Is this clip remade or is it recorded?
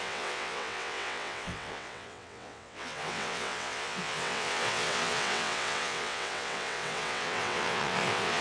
remade